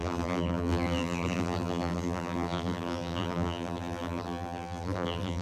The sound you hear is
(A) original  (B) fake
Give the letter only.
B